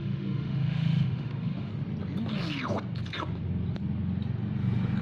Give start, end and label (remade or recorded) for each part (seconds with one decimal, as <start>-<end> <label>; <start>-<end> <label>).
0.0-1.7 remade; 1.7-5.0 recorded